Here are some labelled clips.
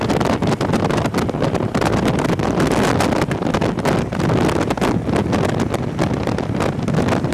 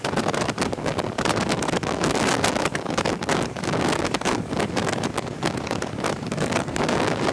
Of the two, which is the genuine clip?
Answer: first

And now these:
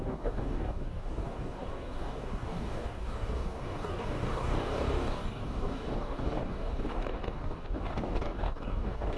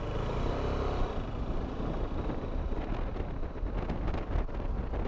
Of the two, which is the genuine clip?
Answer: second